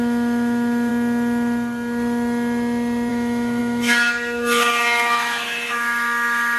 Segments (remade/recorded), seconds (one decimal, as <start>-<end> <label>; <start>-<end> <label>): 0.0-0.9 remade; 0.9-3.1 recorded; 3.1-6.6 remade